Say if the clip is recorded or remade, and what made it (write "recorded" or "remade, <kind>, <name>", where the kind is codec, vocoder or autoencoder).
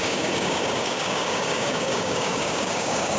remade, codec, DAC